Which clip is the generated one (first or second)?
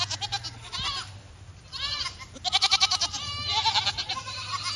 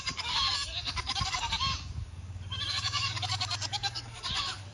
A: second